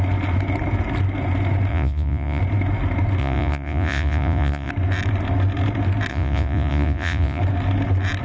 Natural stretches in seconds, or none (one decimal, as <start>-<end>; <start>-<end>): 0.0-1.7; 2.4-3.2; 4.7-6.1; 7.4-8.2